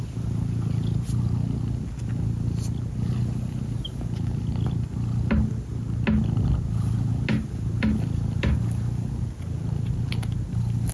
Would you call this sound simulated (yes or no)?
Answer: no